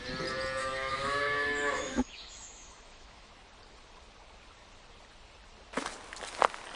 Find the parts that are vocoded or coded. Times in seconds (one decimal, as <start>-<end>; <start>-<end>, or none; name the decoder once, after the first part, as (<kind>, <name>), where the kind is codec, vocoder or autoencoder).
0.6-3.3 (autoencoder, DAC-VAE)